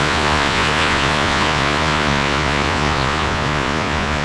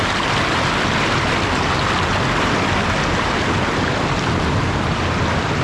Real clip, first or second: second